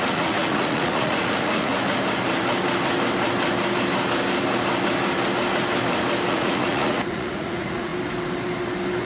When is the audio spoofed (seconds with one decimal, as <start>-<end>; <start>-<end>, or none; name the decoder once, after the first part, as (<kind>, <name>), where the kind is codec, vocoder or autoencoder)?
0.0-1.7 (vocoder, Vocos); 6.3-7.9